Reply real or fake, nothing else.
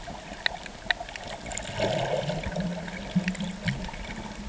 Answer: real